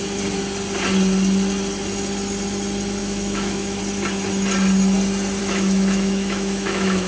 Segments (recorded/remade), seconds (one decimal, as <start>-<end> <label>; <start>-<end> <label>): 0.0-3.0 recorded; 3.0-3.8 remade; 3.8-5.4 recorded; 5.4-7.1 remade